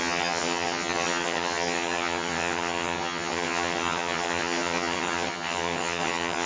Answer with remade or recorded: remade